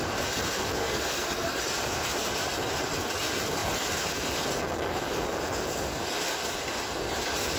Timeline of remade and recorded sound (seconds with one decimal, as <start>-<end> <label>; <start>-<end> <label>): 0.0-0.8 recorded; 0.8-1.6 remade; 1.6-7.6 recorded